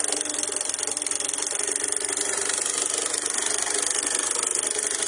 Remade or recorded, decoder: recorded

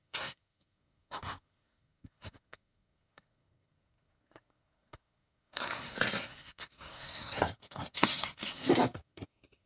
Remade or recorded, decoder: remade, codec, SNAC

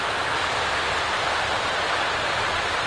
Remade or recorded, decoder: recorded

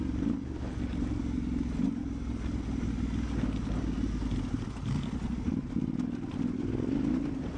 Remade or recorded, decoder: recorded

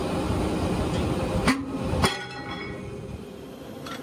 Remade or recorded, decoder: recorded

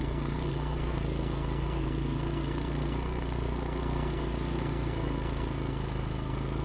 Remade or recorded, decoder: remade, codec, SNAC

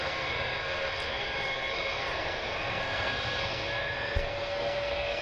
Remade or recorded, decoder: remade, codec, SNAC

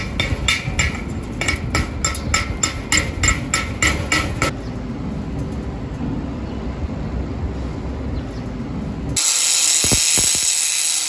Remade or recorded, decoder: recorded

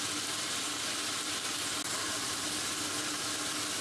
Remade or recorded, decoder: recorded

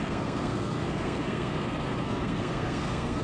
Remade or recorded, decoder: remade, codec, SNAC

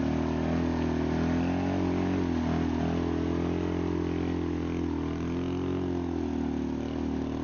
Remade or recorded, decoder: recorded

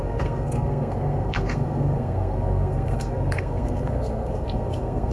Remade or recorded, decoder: remade, codec, SNAC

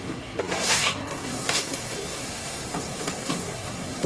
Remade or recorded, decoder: remade, codec, SNAC